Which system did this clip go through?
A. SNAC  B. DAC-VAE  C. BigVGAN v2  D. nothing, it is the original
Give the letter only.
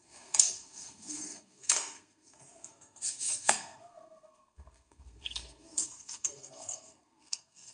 A